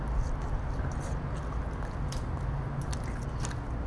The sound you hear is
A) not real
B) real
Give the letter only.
B